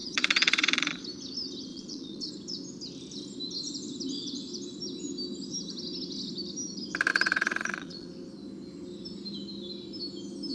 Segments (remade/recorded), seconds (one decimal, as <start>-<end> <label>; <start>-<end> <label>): 0.0-1.0 remade; 1.0-1.7 recorded; 1.7-2.3 remade; 2.3-7.1 recorded; 7.1-8.1 remade; 8.1-10.5 recorded